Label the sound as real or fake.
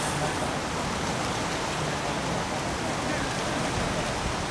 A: real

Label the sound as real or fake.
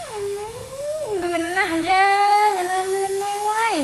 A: fake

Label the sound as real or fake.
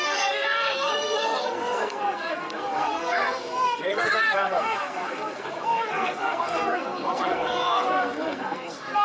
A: fake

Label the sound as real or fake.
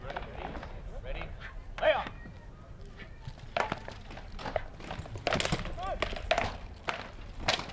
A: real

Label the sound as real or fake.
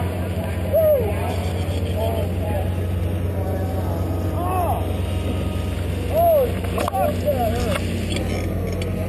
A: real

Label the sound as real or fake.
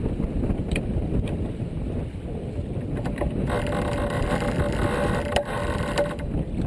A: real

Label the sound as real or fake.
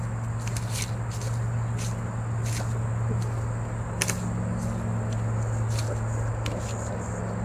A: real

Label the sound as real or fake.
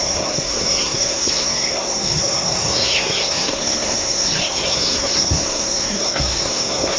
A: fake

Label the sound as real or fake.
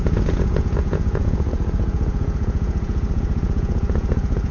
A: fake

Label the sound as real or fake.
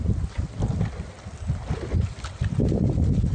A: real